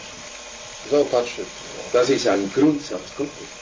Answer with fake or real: real